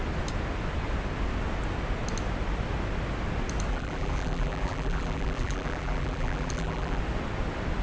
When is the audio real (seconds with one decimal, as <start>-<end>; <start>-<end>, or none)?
0.0-3.7; 7.0-7.8